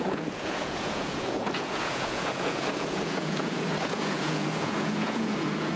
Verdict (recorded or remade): remade